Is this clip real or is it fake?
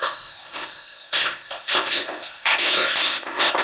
fake